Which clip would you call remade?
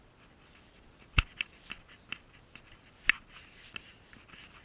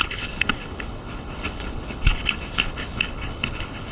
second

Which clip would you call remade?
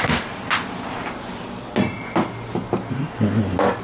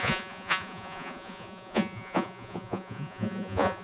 second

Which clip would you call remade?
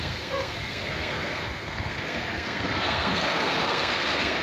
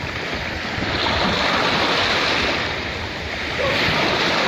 first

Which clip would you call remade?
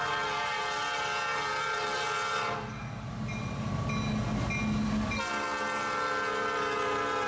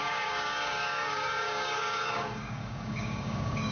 second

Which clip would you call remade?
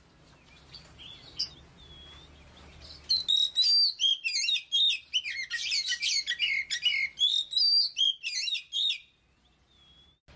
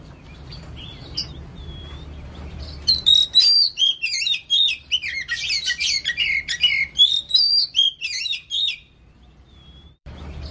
second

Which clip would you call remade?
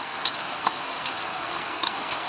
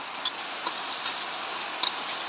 first